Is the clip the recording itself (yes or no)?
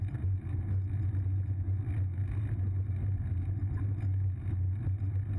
yes